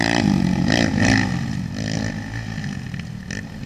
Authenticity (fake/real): real